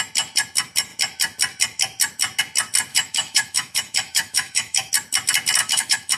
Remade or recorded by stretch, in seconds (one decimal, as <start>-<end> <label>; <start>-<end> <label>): 0.0-2.9 recorded; 2.9-4.9 remade; 4.9-5.6 recorded; 5.6-6.2 remade